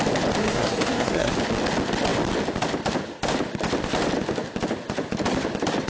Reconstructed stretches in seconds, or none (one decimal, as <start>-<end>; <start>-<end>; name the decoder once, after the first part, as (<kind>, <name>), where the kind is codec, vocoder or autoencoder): 0.4-1.3 (codec, SNAC)